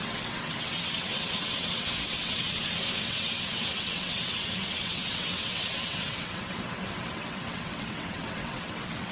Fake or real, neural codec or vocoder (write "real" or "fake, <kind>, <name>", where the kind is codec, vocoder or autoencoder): fake, vocoder, WaveNeXt